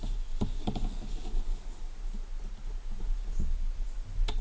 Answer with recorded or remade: recorded